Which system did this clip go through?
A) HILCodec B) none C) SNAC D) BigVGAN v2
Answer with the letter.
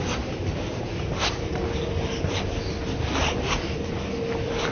B